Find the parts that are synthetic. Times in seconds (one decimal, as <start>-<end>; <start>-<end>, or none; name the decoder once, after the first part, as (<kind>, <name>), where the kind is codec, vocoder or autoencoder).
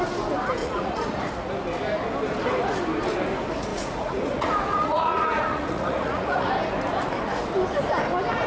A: 0.6-1.5 (vocoder, Vocos); 3.7-6.5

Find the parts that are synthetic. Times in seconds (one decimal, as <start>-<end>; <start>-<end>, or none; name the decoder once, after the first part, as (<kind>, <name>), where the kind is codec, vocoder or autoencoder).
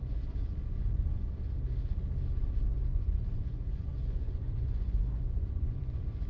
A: 0.5-1.2 (vocoder, Vocos); 2.9-6.3